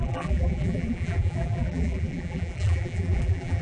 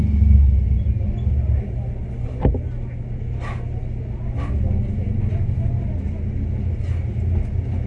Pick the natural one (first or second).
second